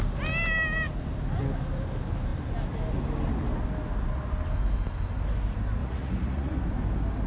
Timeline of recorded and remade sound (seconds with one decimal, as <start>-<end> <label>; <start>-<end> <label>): 0.0-5.8 recorded; 5.8-6.6 remade; 6.6-7.3 recorded